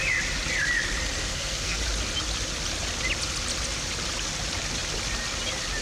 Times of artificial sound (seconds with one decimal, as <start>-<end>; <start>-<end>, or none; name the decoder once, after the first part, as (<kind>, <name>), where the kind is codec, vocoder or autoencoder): 1.2-1.8 (codec, SNAC)